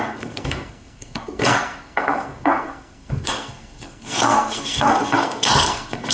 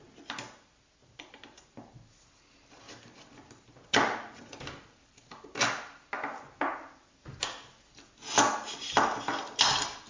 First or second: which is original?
second